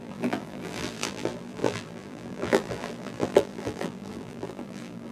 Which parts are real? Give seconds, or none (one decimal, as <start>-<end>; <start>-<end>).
none